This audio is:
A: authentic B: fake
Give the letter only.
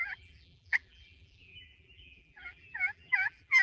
B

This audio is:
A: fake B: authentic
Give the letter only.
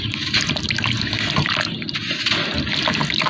B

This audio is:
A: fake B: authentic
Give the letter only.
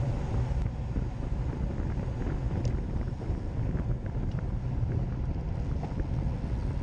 B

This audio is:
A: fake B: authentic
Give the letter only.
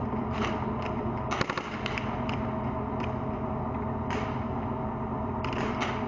B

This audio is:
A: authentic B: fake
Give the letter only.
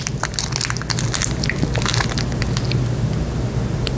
A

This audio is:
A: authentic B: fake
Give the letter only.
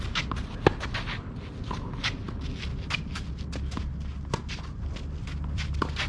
A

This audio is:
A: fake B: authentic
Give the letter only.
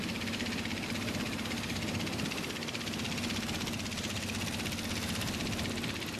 B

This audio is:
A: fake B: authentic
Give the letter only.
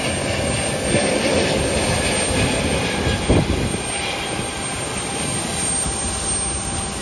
B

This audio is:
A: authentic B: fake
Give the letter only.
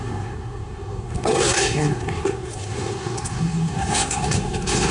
B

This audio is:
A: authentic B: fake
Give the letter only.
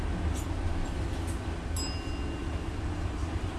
A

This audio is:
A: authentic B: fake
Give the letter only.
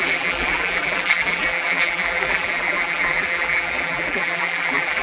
B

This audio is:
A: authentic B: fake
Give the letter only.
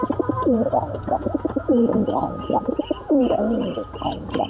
B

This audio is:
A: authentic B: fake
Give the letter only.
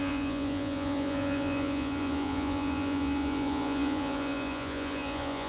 B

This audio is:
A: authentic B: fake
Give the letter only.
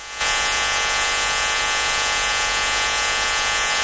B